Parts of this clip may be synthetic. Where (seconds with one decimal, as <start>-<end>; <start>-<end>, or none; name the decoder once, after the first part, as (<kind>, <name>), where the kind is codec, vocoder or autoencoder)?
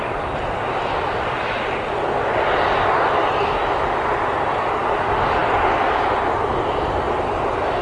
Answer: none